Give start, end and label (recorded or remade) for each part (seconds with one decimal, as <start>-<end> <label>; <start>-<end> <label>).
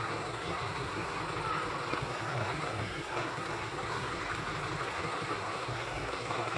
0.0-1.2 remade; 1.2-1.9 recorded; 1.9-4.2 remade; 4.2-4.8 recorded; 4.8-6.6 remade